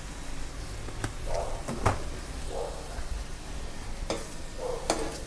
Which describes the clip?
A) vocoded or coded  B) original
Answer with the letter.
B